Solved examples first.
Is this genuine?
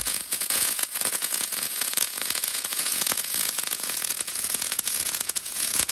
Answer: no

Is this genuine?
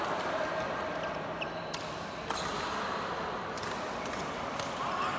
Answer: no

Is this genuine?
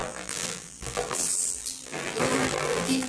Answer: no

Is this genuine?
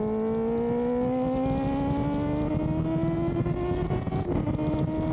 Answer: yes